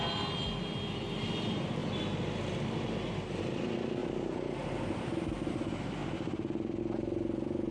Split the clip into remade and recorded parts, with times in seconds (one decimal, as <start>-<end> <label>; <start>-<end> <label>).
0.0-7.7 recorded